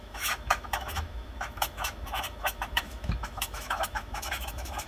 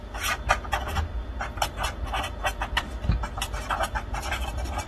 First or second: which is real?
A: second